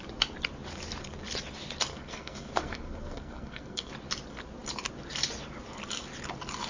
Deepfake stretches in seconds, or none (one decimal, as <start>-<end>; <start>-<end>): 1.9-3.9